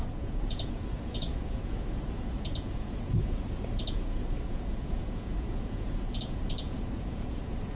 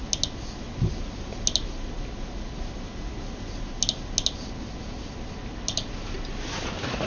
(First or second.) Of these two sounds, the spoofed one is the first